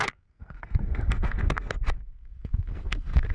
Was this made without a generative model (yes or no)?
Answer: no